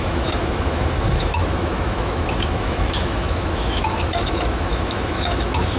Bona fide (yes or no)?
no